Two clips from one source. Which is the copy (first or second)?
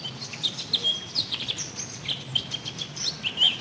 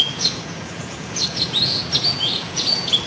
second